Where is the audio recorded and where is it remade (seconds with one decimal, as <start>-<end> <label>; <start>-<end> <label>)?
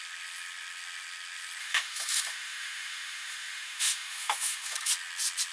0.0-1.6 recorded; 1.6-4.9 remade; 4.9-5.5 recorded